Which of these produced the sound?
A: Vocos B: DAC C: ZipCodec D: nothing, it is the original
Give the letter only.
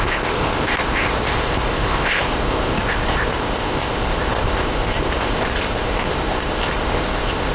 C